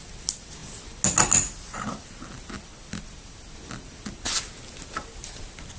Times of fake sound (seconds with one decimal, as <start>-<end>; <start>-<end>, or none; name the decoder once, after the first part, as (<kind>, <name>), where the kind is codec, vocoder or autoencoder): none

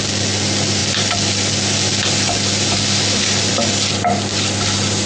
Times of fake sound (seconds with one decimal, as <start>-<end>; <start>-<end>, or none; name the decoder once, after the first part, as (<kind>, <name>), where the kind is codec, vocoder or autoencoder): none

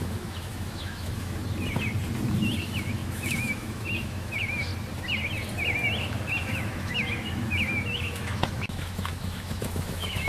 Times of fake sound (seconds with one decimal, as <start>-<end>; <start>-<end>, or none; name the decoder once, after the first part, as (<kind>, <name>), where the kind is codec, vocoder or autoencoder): 0.0-1.4 (autoencoder, DAC-VAE); 2.6-4.7; 6.0-10.3

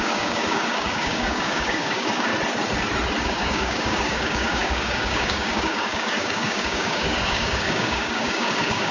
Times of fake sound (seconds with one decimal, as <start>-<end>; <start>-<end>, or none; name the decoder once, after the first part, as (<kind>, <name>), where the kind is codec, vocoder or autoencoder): 0.0-2.3 (codec, DAC); 3.2-8.9

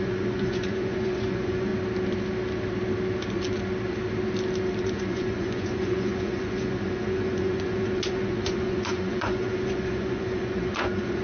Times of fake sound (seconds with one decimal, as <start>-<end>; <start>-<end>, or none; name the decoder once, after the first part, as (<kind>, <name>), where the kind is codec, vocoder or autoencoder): 0.0-1.7 (vocoder, Vocos); 4.8-11.2

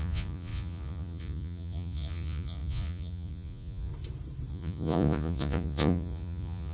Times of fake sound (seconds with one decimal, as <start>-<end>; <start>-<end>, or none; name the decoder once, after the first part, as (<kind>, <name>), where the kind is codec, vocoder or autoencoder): 0.0-3.9 (vocoder, Vocos); 4.5-6.7

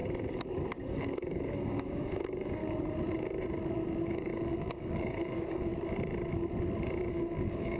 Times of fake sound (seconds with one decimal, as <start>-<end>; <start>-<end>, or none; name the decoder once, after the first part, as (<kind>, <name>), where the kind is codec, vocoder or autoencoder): 0.9-2.6 (codec, DAC); 4.1-5.7; 7.1-7.8